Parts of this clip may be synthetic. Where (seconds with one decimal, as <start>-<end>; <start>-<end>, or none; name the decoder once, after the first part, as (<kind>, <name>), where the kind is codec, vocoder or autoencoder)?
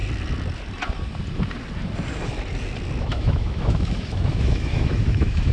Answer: 3.0-5.5 (autoencoder, DAC-VAE)